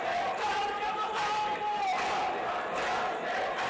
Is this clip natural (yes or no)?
yes